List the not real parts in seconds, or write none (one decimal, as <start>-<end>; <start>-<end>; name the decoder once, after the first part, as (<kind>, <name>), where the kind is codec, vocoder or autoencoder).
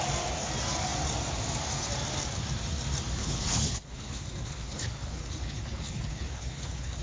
3.2-7.0 (codec, HILCodec)